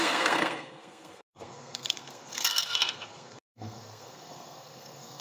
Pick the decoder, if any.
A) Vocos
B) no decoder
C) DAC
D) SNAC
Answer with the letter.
D